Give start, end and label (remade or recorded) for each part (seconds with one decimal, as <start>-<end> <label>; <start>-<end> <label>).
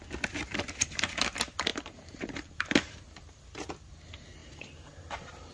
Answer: 0.0-1.7 recorded; 1.7-3.4 remade; 3.4-4.4 recorded; 4.4-5.5 remade